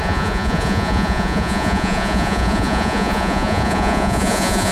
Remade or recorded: remade